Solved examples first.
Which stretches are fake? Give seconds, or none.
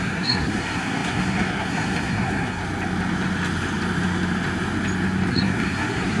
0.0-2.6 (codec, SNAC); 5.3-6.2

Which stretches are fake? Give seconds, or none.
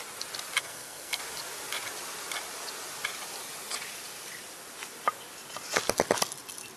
0.6-1.2 (codec, SNAC)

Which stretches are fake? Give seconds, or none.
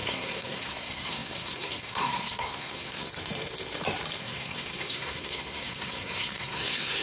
0.0-3.1 (codec, SNAC); 4.2-7.0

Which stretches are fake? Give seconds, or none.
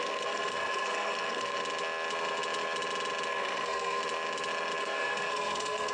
0.0-1.6 (codec, SNAC); 3.3-4.0; 4.8-5.9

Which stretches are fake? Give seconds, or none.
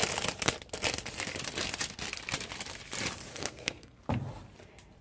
3.3-4.0 (codec, SNAC)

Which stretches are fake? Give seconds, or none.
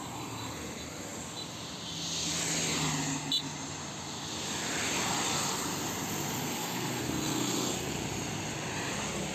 6.4-7.9 (codec, SNAC)